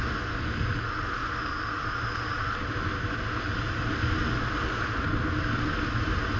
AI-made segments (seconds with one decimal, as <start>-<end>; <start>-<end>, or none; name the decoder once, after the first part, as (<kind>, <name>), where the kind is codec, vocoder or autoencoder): none